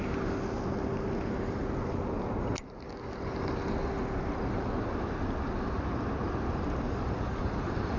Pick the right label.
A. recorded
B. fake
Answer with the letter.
A